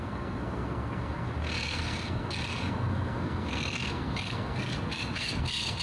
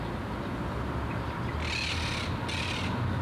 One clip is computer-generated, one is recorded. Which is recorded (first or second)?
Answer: second